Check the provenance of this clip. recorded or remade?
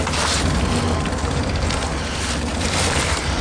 recorded